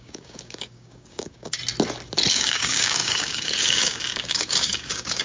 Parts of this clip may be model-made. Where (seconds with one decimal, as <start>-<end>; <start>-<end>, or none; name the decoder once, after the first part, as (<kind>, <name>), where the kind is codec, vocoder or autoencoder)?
0.0-1.6 (codec, DAC); 2.3-5.2